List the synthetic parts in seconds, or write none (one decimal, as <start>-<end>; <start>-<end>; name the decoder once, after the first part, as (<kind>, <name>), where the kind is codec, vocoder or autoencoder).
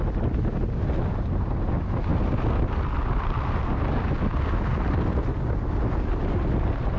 none